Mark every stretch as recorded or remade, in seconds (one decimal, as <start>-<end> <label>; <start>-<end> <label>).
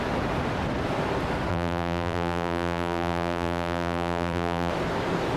0.0-1.5 recorded; 1.5-4.7 remade; 4.7-5.4 recorded